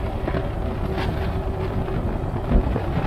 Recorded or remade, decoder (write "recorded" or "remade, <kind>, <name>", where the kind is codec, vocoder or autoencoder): recorded